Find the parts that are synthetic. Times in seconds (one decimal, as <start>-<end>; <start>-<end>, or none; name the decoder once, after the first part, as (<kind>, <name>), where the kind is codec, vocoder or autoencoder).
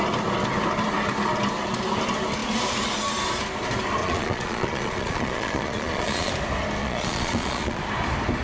4.0-6.3 (vocoder, Vocos); 6.8-7.8